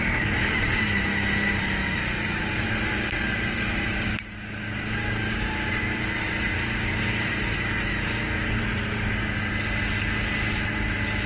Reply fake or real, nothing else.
real